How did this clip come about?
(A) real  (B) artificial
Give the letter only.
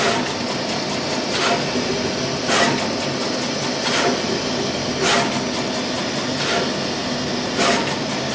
A